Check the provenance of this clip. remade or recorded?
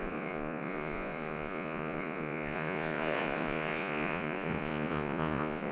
remade